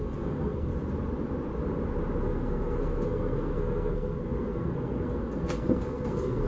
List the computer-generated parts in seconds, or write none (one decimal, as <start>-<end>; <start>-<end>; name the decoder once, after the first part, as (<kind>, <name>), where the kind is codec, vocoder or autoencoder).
0.0-0.7 (codec, SNAC); 2.2-6.5